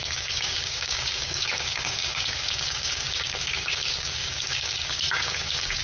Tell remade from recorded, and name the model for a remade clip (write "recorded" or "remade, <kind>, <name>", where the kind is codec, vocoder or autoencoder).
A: remade, codec, DAC